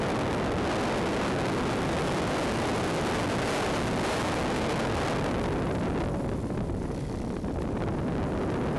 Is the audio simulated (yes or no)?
no